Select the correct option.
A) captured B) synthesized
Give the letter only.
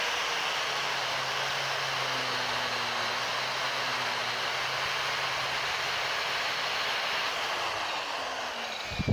A